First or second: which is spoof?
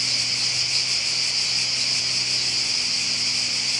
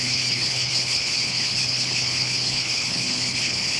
second